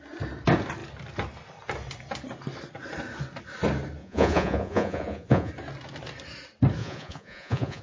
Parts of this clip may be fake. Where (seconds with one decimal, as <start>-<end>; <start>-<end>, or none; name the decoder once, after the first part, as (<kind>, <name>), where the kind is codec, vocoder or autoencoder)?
4.0-5.5 (vocoder, Vocos); 6.8-7.8

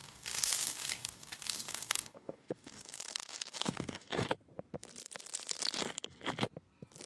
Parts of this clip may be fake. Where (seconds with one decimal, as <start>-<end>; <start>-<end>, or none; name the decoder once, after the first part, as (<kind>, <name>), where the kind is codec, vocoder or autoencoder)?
0.0-4.3 (codec, DAC)

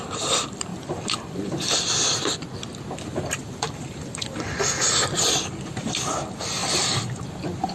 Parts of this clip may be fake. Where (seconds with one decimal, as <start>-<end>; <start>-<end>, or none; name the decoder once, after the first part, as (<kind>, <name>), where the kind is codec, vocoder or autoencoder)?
0.7-1.6 (vocoder, BigVGAN v2); 3.1-4.7; 6.6-7.7

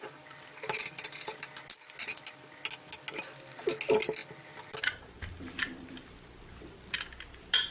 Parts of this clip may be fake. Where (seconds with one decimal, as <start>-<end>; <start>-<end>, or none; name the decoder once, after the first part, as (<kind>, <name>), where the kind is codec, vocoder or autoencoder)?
none

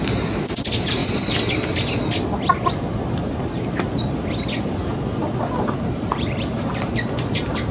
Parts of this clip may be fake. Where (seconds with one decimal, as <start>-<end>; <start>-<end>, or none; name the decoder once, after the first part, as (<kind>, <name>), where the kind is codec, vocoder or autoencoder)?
0.0-1.0 (vocoder, BigVGAN v2); 5.6-6.7; 7.3-7.7

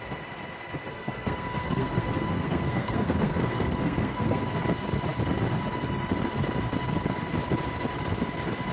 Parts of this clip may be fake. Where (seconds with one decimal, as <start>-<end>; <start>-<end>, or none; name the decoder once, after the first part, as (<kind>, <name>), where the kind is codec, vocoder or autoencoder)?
0.9-4.4 (codec, SNAC)

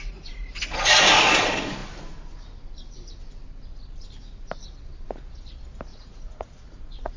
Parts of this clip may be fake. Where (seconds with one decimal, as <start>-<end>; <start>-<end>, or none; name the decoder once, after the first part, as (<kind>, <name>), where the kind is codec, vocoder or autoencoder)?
5.9-7.2 (vocoder, Vocos)

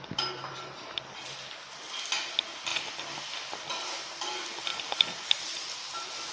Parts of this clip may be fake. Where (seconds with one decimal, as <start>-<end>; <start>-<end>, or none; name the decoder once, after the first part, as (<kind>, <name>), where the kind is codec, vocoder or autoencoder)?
4.7-5.4 (vocoder, BigVGAN v2)